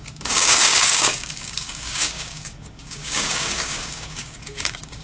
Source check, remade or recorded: remade